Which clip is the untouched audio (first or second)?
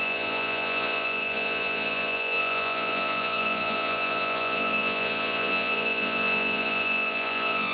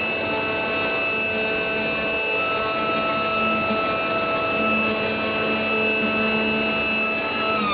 second